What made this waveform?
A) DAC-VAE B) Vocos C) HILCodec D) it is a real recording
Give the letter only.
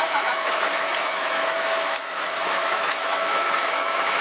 A